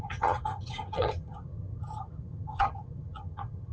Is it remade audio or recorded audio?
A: remade